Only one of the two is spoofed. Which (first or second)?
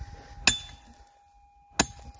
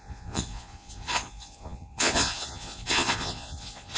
second